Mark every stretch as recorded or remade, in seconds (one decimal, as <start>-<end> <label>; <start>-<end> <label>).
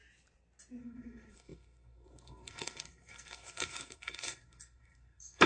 0.0-0.8 recorded; 0.8-5.5 remade